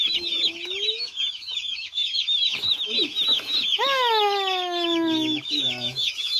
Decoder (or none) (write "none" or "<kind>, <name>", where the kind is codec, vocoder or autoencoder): autoencoder, DAC-VAE